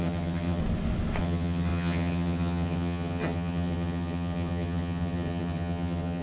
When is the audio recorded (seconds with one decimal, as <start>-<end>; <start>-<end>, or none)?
0.6-1.2